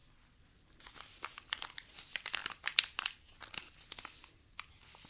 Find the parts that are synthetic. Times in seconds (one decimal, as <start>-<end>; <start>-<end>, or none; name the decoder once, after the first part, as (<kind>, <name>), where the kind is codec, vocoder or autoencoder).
none